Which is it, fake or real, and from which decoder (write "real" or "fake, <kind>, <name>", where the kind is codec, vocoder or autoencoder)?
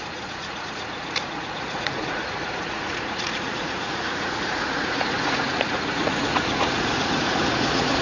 fake, vocoder, Vocos